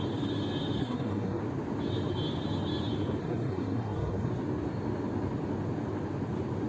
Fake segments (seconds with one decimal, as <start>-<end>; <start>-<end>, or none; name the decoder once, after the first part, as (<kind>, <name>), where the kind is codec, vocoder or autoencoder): 0.8-1.4 (codec, SNAC); 3.2-4.3